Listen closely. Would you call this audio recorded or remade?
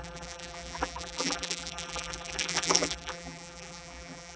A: remade